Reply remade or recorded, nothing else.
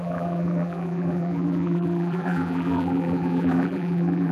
remade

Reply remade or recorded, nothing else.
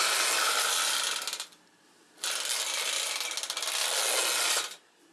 recorded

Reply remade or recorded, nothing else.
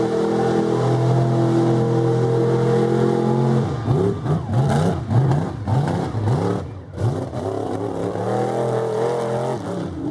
recorded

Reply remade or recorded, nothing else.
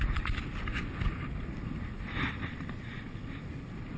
recorded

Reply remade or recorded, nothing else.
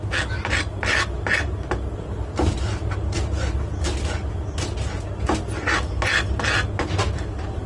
recorded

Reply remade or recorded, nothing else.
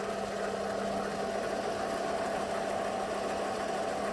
recorded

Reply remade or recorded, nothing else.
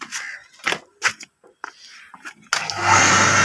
recorded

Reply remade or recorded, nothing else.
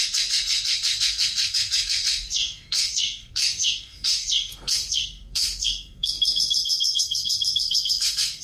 remade